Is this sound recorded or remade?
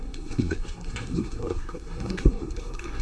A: remade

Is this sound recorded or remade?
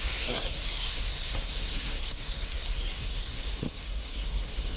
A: remade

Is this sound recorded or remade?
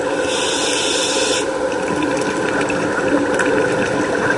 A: recorded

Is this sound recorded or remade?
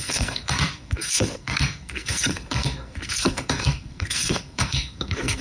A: remade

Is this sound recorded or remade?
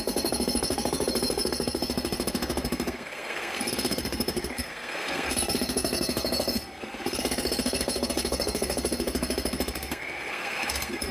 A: remade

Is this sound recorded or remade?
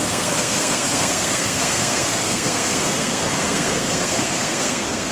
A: remade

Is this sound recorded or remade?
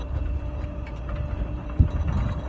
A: recorded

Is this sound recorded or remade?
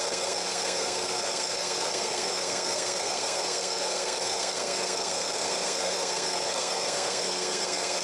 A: remade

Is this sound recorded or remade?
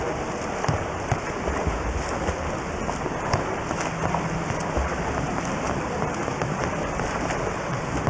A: recorded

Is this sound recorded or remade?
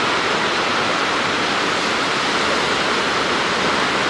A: recorded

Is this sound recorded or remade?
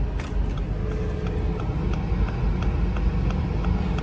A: recorded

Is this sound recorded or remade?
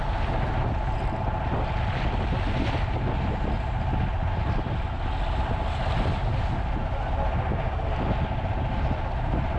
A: recorded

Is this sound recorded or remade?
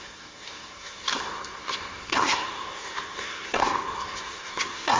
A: remade